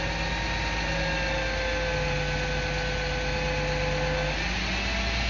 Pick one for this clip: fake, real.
real